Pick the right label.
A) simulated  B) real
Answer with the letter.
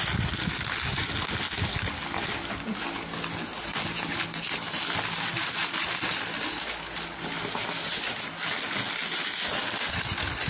B